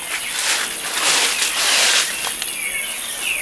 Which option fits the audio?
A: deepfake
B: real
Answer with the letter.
B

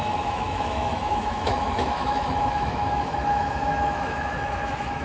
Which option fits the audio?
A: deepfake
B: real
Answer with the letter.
A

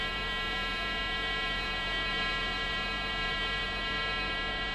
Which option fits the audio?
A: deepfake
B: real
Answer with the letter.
A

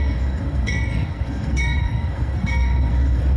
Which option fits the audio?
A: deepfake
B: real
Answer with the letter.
A